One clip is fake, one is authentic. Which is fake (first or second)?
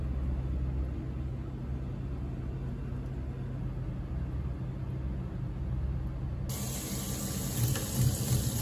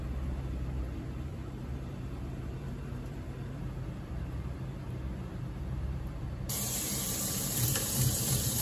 second